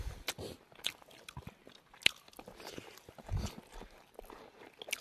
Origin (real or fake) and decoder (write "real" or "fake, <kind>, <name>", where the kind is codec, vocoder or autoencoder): real